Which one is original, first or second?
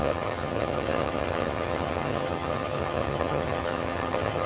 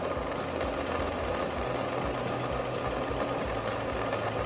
second